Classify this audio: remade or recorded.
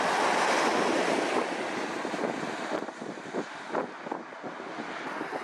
recorded